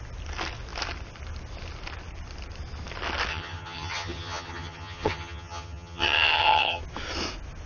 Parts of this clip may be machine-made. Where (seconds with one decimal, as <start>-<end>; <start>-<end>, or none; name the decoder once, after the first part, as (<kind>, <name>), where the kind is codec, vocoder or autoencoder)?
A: 3.3-6.8 (vocoder, HiFi-GAN)